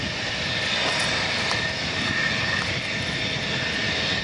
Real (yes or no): yes